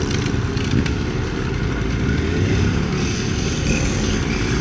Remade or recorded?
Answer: recorded